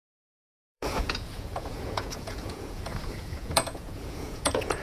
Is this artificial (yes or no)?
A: yes